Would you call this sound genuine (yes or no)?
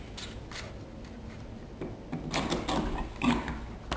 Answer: yes